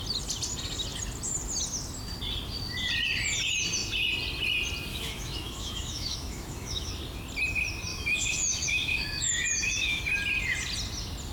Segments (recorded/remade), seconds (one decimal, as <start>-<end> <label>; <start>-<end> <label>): 0.0-4.9 recorded; 4.9-6.9 remade; 6.9-7.9 recorded; 7.9-10.0 remade; 10.0-11.3 recorded